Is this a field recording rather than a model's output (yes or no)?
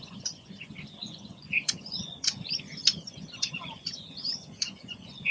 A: no